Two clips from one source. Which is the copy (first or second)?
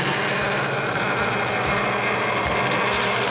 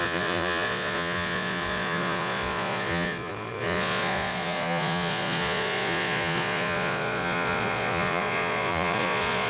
second